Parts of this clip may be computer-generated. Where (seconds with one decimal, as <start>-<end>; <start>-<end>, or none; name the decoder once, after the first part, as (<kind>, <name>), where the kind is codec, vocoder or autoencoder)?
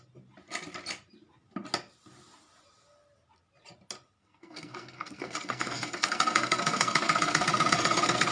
4.2-8.3 (codec, SNAC)